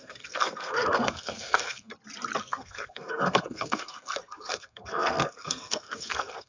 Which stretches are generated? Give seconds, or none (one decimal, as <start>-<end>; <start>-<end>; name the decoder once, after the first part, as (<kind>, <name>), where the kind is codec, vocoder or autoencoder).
0.0-1.9 (codec, SNAC); 2.4-6.5